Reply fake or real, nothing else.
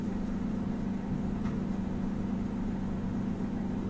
fake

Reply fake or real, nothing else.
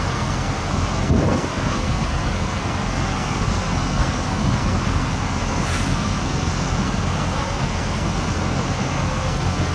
fake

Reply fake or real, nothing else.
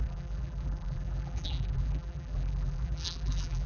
fake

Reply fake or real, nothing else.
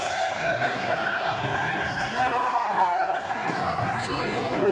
fake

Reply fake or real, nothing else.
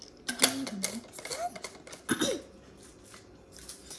real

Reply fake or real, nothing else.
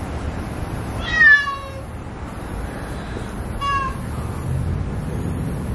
fake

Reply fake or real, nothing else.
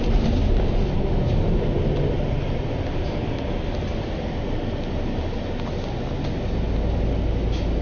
real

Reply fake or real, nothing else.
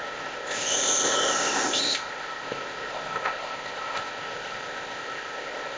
fake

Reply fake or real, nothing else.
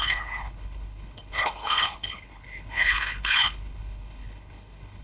fake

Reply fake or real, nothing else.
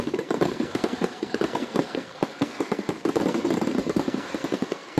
fake